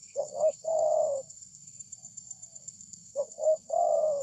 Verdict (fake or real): fake